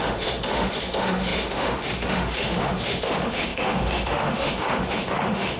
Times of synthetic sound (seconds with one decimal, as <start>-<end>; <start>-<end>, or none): 0.0-5.6